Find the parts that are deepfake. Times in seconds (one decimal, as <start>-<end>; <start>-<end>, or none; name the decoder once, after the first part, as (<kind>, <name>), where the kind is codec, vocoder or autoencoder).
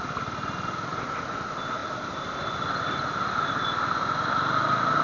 none